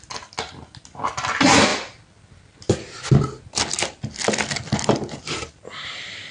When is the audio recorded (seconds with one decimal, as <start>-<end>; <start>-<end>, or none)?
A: 0.0-6.3